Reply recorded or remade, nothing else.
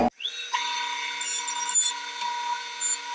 recorded